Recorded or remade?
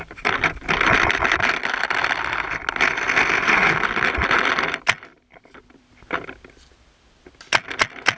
recorded